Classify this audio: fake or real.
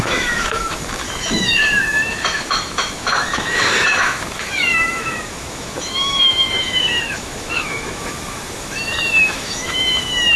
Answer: fake